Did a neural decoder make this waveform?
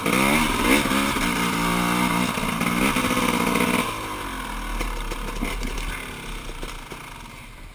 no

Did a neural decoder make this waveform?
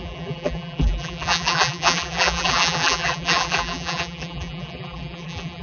yes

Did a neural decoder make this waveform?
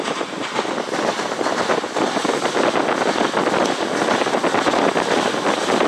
no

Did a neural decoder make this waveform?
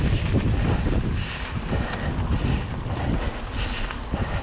no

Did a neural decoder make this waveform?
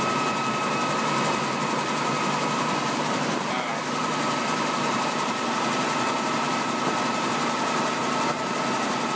yes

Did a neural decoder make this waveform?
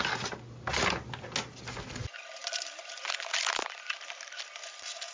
no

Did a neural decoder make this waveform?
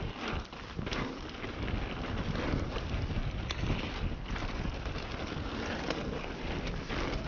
no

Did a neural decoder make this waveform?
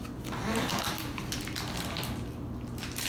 no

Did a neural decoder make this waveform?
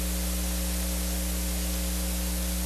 no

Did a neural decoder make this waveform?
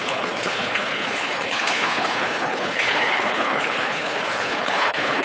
yes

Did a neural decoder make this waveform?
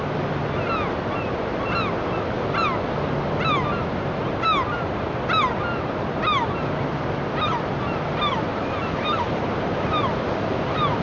no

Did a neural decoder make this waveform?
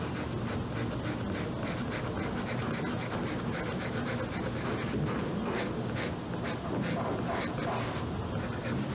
no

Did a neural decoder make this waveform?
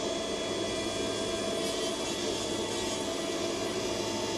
no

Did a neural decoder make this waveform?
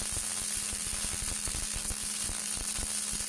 no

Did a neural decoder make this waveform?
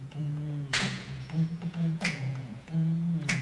yes